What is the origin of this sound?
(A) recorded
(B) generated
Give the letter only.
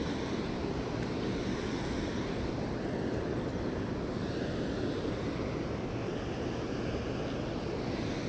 A